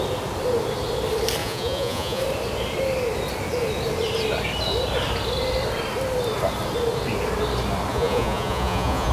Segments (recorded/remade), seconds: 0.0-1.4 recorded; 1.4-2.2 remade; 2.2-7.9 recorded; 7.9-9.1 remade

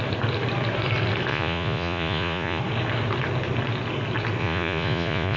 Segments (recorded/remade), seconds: 0.0-1.3 recorded; 1.3-2.6 remade; 2.6-4.4 recorded; 4.4-5.4 remade

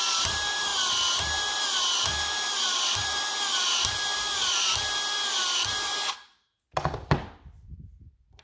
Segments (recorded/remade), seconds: 0.0-8.4 recorded

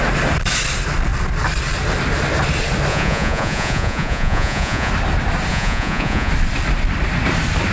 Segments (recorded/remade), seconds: 0.0-2.9 recorded; 2.9-4.9 remade; 4.9-5.5 recorded; 5.5-6.3 remade; 6.3-7.7 recorded

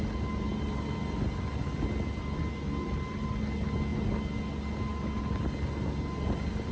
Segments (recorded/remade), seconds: 0.0-6.7 recorded

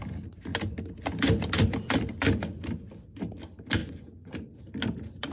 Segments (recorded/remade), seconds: 0.0-3.8 recorded; 3.8-4.6 remade; 4.6-5.3 recorded

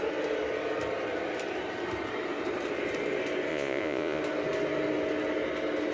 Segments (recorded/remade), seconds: 0.0-3.5 recorded; 3.5-4.2 remade; 4.2-5.9 recorded